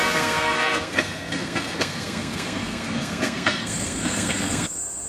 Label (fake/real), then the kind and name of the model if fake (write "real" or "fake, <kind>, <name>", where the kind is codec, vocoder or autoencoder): fake, codec, SNAC